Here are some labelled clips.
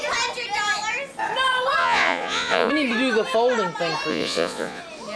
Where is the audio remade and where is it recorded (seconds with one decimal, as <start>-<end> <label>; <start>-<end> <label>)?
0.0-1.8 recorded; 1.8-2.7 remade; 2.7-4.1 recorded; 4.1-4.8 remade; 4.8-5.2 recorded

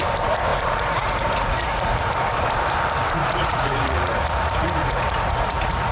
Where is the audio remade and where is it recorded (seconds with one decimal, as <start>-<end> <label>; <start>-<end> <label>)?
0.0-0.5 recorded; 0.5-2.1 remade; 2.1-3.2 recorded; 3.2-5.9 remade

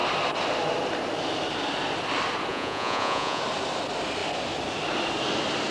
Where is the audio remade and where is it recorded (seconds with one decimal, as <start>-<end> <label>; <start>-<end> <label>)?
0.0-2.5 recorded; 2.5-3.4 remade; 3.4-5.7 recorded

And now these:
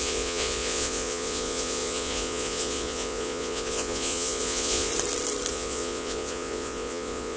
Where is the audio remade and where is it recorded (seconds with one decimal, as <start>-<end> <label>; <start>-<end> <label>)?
0.0-4.9 remade; 4.9-5.5 recorded; 5.5-7.4 remade